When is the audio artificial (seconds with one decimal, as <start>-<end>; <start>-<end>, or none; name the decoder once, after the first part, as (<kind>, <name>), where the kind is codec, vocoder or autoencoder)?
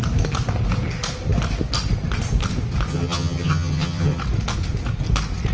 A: 2.9-4.2 (vocoder, HiFi-GAN)